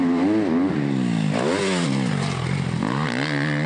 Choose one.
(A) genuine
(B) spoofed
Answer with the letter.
A